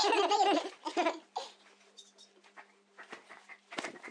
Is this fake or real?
real